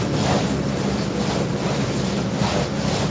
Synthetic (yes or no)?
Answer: yes